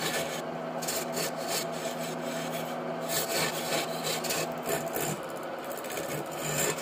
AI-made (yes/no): no